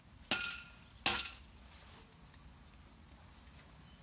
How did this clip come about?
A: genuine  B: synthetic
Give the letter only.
A